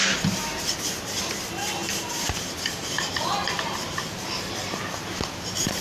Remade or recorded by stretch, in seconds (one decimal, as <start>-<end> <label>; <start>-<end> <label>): 0.0-1.8 recorded; 1.8-4.8 remade; 4.8-5.8 recorded